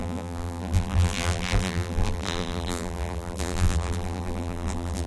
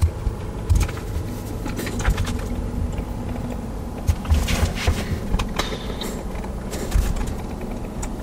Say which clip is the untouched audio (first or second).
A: second